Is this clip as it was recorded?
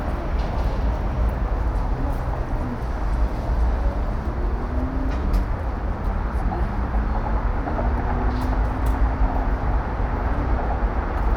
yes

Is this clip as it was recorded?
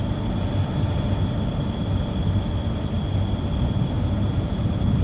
yes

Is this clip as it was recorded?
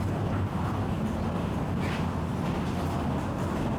yes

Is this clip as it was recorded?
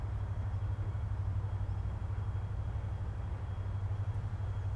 yes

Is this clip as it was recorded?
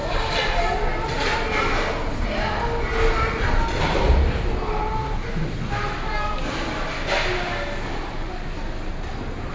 yes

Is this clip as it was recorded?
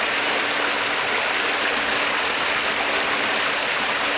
yes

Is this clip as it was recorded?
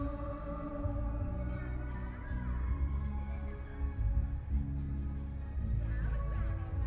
yes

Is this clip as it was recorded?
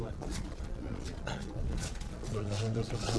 no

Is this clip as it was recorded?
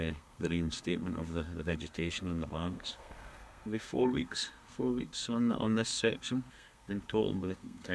no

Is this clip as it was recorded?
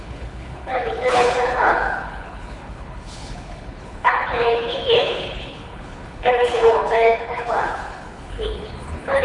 no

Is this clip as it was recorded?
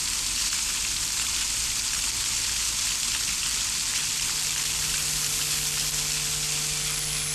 yes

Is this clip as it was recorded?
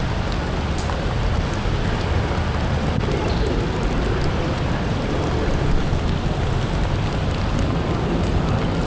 yes